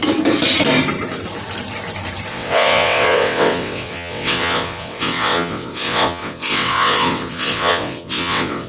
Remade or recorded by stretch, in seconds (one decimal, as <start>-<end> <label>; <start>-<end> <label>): 0.0-2.3 recorded; 2.3-8.7 remade